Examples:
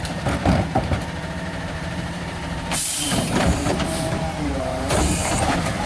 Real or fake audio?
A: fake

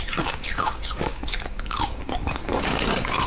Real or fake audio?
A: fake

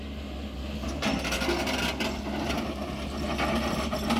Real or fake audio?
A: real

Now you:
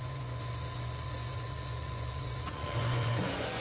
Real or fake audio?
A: fake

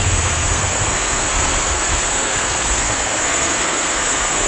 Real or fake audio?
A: fake